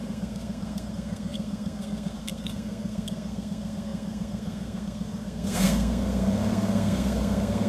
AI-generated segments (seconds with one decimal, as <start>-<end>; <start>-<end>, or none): 0.0-7.7